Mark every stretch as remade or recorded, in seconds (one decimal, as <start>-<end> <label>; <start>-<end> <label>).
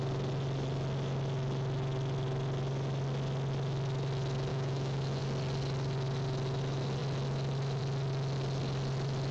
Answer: 0.0-4.5 recorded; 4.5-5.2 remade; 5.2-9.3 recorded